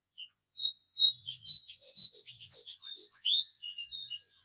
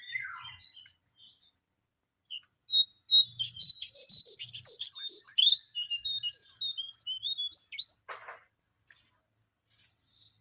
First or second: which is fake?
first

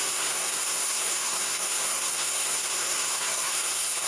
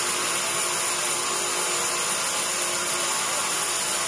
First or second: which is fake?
first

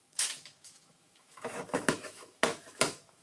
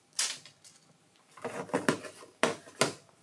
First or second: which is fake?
first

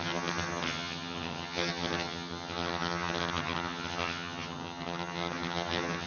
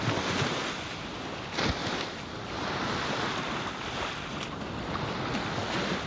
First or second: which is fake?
first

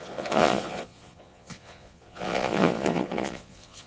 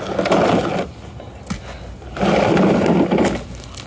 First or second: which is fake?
first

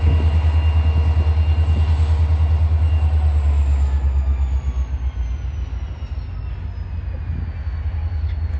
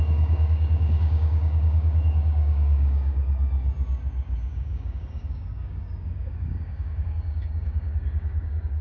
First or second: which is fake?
second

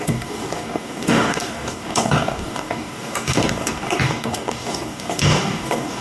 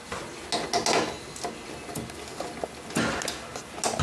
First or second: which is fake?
first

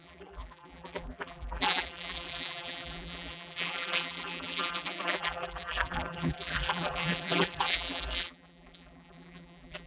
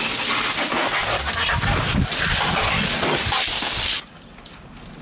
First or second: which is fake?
first